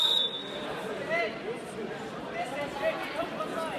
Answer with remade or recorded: recorded